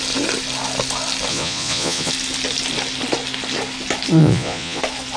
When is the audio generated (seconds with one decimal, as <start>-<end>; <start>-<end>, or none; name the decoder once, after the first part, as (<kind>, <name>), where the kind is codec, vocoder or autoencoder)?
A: 1.3-2.1 (vocoder, Vocos); 4.2-4.8